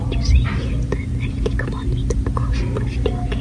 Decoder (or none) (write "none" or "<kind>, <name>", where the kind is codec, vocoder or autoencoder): none